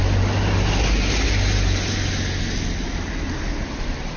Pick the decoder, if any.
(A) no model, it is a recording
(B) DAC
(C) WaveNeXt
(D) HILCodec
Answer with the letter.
A